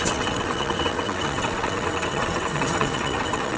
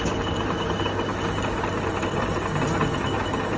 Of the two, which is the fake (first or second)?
first